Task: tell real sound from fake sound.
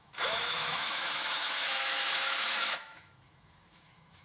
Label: fake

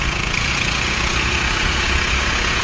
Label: fake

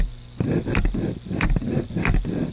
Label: real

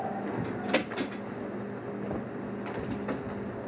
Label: real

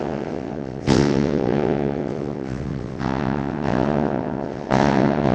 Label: fake